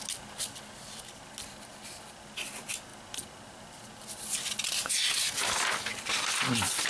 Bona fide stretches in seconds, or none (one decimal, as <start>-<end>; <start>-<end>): 0.0-6.9